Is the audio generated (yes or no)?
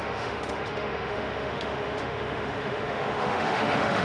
yes